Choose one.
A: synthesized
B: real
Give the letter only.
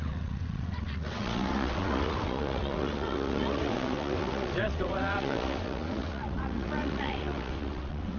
A